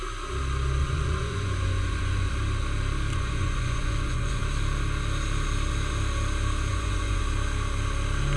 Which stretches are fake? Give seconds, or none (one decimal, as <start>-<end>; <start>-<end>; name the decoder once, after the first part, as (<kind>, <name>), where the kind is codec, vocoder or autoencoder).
0.8-2.3 (vocoder, Vocos); 3.1-4.4; 6.7-7.2